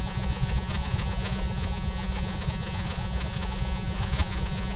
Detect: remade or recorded remade